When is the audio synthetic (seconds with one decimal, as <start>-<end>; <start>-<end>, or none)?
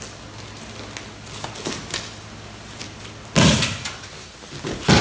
none